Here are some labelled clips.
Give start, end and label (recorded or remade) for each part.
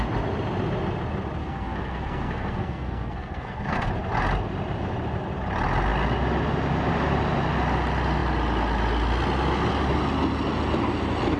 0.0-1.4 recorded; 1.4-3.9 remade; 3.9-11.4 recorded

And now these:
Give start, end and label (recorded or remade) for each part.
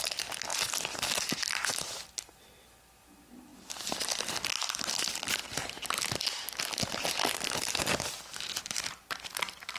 0.0-9.8 recorded